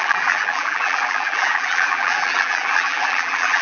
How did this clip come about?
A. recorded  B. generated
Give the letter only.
B